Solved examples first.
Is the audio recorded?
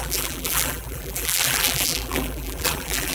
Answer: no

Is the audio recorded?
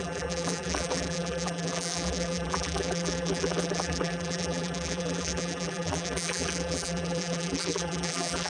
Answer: no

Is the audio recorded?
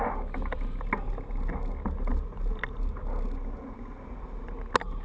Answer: yes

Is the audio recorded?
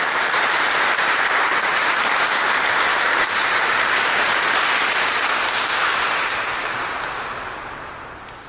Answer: no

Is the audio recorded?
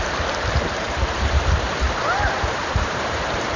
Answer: no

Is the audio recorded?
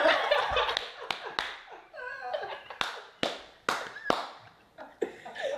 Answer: yes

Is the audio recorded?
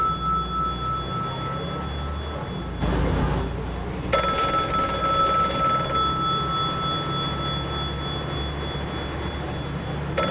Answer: yes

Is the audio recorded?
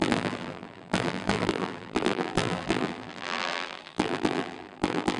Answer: no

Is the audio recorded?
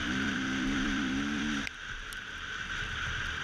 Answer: no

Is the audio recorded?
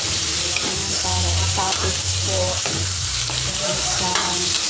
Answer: no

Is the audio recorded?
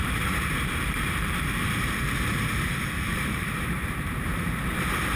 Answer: no